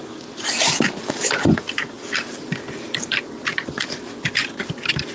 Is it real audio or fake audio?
real